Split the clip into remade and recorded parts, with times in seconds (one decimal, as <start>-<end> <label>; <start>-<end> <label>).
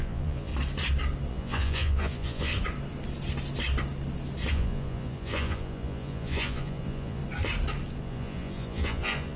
0.0-0.5 remade; 0.5-1.3 recorded; 1.3-2.5 remade; 2.5-4.5 recorded; 4.5-7.2 remade; 7.2-8.0 recorded; 8.0-9.4 remade